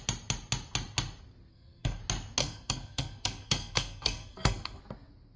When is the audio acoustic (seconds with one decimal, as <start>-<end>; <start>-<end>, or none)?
0.0-1.5; 2.0-2.4; 4.8-5.4